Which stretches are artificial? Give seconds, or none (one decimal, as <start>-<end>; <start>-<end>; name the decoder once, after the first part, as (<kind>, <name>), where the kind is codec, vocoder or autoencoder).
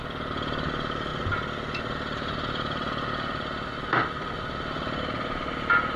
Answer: none